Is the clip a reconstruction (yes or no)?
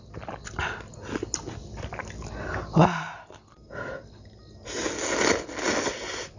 no